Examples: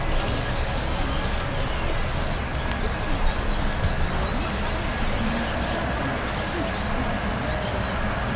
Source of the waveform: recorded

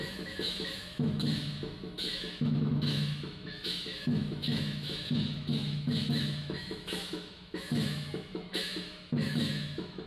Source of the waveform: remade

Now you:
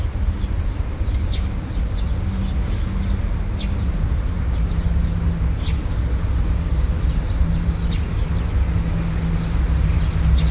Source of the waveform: recorded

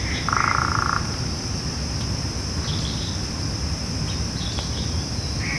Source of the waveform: recorded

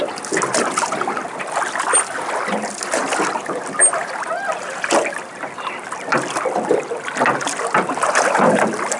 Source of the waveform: recorded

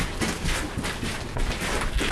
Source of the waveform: recorded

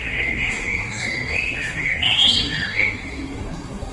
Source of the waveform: remade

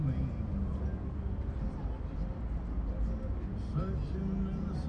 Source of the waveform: recorded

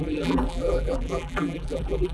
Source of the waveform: remade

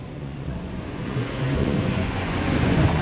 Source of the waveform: remade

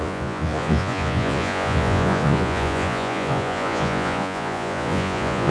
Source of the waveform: remade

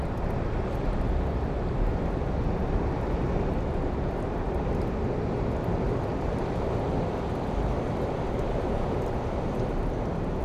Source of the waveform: recorded